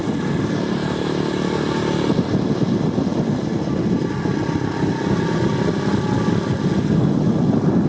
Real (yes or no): yes